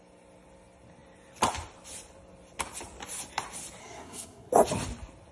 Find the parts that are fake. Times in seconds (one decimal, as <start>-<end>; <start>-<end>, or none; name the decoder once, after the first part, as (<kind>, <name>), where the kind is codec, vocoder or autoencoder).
3.8-4.5 (codec, SNAC)